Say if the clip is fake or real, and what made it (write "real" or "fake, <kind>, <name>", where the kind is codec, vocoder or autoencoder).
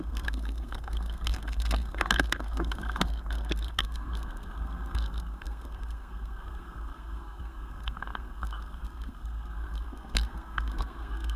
fake, codec, SNAC